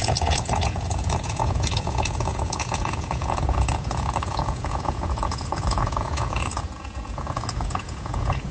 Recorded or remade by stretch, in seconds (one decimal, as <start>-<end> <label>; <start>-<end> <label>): 0.0-8.5 remade